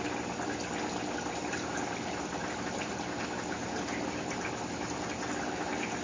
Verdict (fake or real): real